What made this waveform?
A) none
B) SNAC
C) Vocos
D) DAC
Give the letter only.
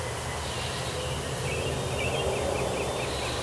A